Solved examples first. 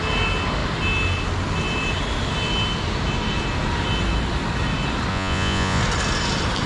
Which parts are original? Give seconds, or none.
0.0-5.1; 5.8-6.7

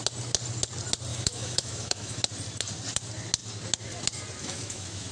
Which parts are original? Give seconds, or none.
0.0-1.1; 2.2-4.4

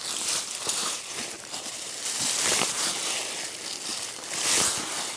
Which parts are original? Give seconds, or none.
0.0-0.8; 2.9-5.2

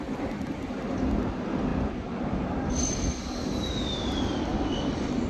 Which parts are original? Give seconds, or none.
0.0-5.3

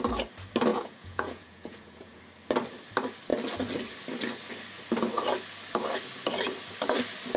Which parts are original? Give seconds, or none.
0.0-0.7; 2.2-7.4

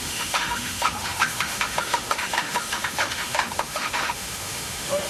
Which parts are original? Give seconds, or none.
none

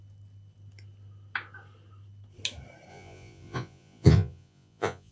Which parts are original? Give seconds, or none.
0.0-2.9